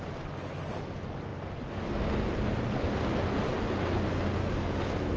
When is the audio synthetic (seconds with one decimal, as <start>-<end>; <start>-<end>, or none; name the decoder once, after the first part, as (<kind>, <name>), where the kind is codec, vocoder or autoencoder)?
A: none